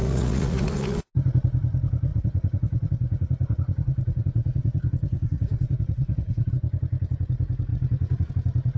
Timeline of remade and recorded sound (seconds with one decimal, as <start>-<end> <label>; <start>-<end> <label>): 0.0-1.1 remade; 1.1-2.1 recorded; 2.1-6.5 remade; 6.5-7.7 recorded; 7.7-8.3 remade; 8.3-8.8 recorded